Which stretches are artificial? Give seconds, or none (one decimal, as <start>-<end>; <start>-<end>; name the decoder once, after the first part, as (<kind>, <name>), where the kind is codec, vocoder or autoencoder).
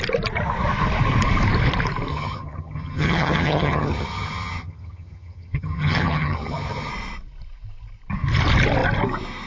2.1-6.9 (vocoder, HiFi-GAN)